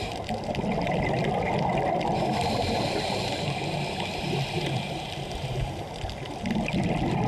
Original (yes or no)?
yes